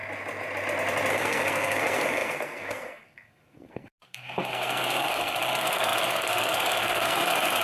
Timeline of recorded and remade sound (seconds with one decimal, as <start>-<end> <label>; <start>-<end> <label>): 0.0-1.1 recorded; 1.1-7.6 remade